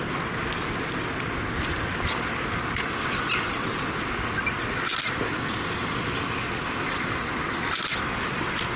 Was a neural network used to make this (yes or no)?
no